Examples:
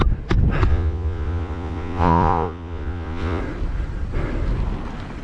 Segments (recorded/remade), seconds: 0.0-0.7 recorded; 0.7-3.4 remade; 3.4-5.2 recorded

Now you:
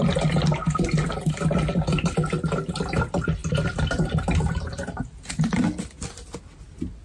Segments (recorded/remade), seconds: 0.0-7.0 recorded

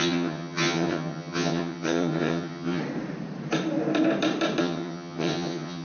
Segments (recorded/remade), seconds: 0.0-2.8 remade; 2.8-4.6 recorded; 4.6-5.8 remade

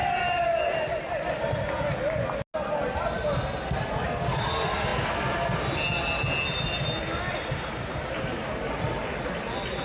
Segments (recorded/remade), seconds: 0.0-9.8 recorded

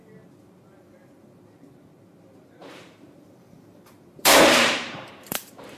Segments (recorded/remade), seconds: 0.0-2.6 recorded; 2.6-5.8 remade